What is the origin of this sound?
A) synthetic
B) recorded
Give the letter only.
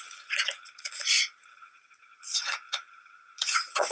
A